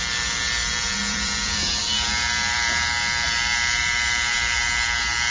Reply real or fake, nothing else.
fake